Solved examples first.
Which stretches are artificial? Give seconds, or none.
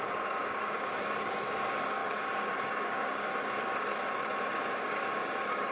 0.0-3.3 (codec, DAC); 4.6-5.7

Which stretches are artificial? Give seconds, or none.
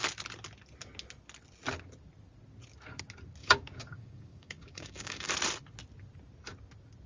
3.4-5.3 (codec, DAC)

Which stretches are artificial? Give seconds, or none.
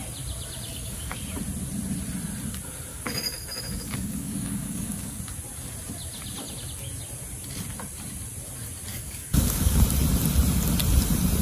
0.7-1.2 (codec, DAC); 2.9-5.2; 8.9-9.8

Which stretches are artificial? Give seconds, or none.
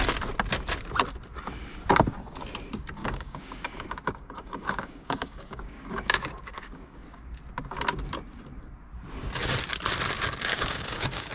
3.0-7.4 (codec, DAC); 10.5-11.3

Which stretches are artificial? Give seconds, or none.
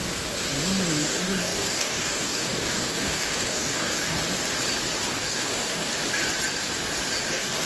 1.0-4.2 (codec, DAC); 5.1-5.9; 7.3-7.7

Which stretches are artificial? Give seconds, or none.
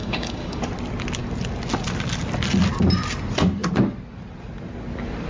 0.0-0.6 (codec, DAC)